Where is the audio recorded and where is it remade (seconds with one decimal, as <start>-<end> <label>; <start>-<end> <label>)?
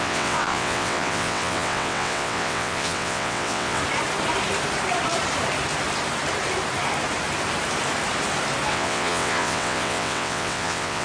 0.0-3.8 remade; 3.8-8.7 recorded; 8.7-11.0 remade